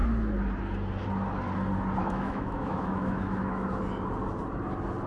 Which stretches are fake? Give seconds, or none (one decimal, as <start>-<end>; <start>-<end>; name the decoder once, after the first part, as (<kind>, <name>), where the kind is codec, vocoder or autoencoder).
2.0-3.8 (autoencoder, DAC-VAE)